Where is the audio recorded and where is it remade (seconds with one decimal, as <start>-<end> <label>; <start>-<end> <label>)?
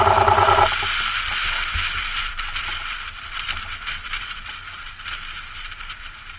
0.0-2.0 recorded; 2.0-4.9 remade; 4.9-6.4 recorded